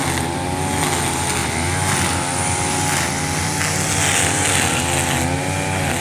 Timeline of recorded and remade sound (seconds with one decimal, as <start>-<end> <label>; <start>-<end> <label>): 0.0-6.0 recorded